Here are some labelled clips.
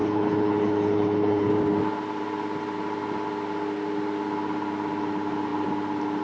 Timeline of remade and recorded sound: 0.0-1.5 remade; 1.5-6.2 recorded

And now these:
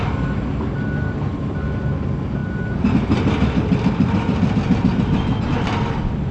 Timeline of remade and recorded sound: 0.0-6.3 recorded

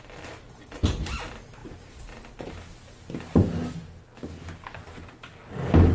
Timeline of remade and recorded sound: 0.0-5.9 recorded

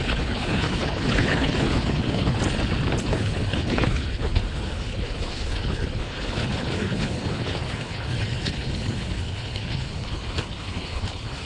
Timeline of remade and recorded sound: 0.0-2.4 remade; 2.4-3.0 recorded; 3.0-11.5 remade

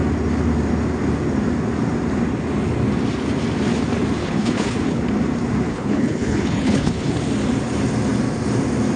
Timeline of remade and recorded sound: 0.0-4.2 recorded; 4.2-5.0 remade; 5.0-5.7 recorded; 5.7-7.1 remade; 7.1-9.0 recorded

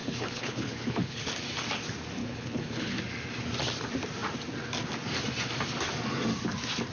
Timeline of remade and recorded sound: 0.0-1.3 remade; 1.3-2.2 recorded; 2.2-3.0 remade; 3.0-6.9 recorded

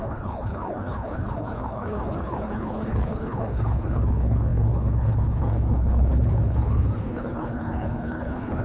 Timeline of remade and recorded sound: 0.0-8.6 remade

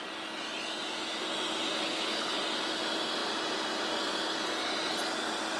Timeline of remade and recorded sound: 0.0-1.8 recorded; 1.8-2.4 remade; 2.4-5.6 recorded